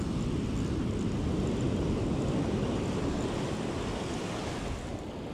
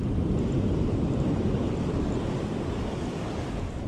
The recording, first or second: first